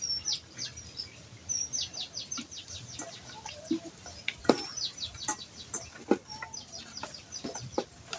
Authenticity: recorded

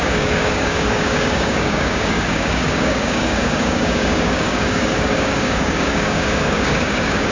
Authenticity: remade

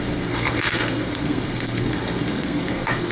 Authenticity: remade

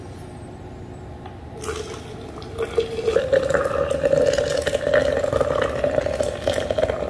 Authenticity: recorded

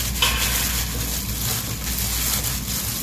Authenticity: recorded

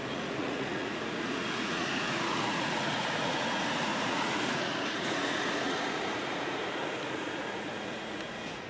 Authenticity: remade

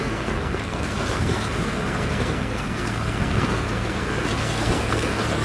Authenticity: remade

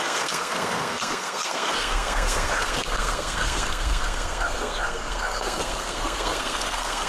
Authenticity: remade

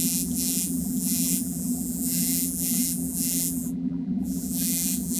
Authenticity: remade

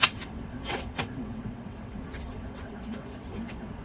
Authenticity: remade